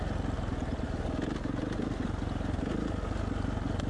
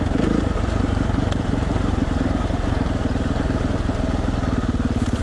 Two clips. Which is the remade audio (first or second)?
second